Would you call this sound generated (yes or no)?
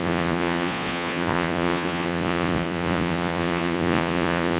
yes